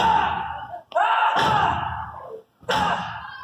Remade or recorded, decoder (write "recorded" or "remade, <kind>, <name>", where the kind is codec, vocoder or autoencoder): recorded